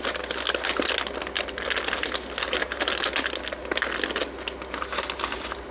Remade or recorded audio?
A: recorded